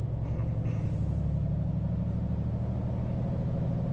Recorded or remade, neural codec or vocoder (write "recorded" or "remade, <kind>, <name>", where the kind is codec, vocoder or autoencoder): recorded